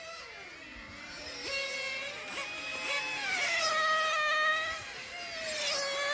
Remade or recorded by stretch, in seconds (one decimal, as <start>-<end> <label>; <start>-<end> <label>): 0.0-0.7 recorded; 0.7-1.2 remade; 1.2-2.7 recorded; 2.7-3.6 remade; 3.6-6.1 recorded